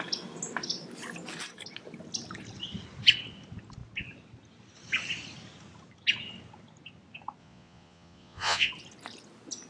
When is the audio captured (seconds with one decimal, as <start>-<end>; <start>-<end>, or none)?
0.0-7.4; 8.7-9.7